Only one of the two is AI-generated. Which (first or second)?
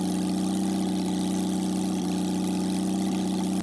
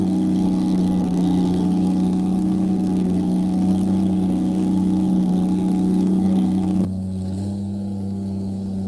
second